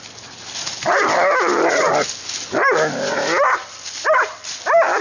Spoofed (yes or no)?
no